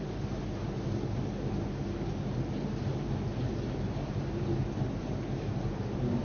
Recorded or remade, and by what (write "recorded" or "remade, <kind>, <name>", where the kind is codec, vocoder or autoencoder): recorded